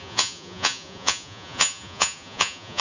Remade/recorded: remade